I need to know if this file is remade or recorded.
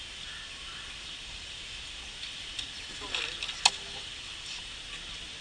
recorded